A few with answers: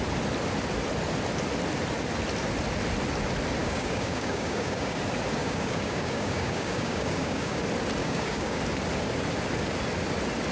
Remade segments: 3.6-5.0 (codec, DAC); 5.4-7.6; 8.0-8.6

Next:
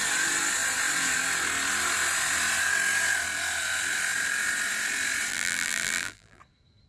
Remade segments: 5.3-6.4 (vocoder, BigVGAN v2)

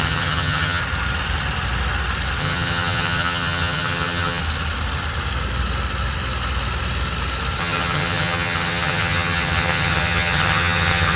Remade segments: 0.0-0.8 (vocoder, HiFi-GAN); 2.4-4.4; 7.6-11.2

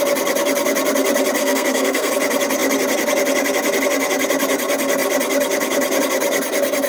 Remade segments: 1.4-2.1 (codec, SNAC)

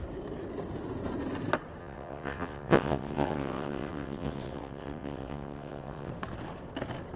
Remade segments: 1.8-6.1 (vocoder, WaveNeXt)